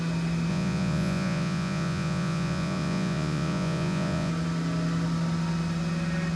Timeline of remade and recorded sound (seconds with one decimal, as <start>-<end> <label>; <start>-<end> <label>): 0.0-0.5 recorded; 0.5-4.3 remade; 4.3-6.4 recorded

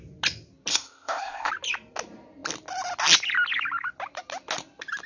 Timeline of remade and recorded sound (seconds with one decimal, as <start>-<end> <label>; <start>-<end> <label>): 0.0-0.7 recorded; 0.7-1.5 remade; 1.5-5.1 recorded

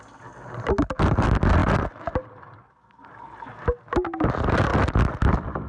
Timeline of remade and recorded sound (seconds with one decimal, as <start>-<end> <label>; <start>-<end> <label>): 0.0-5.7 recorded